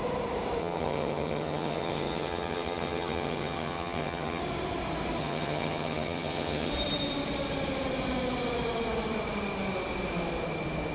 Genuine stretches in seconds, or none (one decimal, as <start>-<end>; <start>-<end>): 0.0-0.6; 4.4-5.2; 6.7-10.9